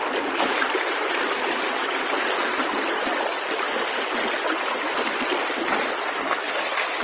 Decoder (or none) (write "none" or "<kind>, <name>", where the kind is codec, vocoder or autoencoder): none